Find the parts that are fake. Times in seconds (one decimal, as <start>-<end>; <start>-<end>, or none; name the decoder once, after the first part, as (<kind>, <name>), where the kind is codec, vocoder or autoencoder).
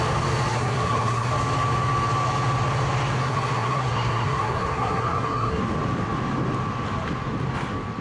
0.5-1.3 (codec, SNAC); 3.2-5.6